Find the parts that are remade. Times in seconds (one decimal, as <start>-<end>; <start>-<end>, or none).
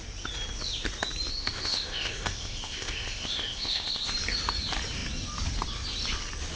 1.3-4.1